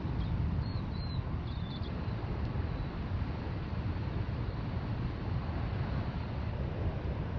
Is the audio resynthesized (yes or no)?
no